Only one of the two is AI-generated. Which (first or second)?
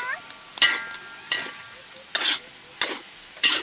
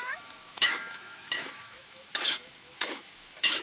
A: second